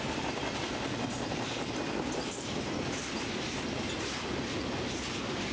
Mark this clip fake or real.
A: fake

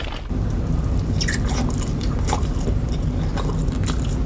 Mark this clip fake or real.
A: real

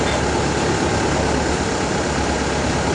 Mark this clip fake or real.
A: real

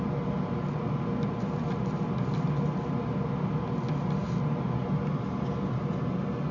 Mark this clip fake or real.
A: real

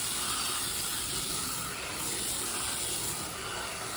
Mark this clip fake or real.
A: real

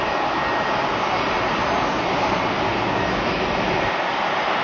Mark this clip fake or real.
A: real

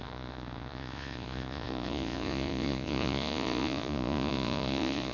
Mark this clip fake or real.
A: fake